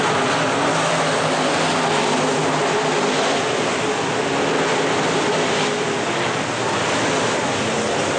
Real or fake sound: real